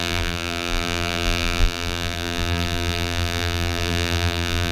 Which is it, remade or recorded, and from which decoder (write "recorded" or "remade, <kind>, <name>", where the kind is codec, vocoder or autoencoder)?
remade, vocoder, BigVGAN v2